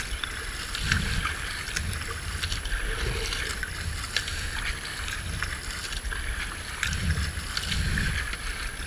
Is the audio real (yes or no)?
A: yes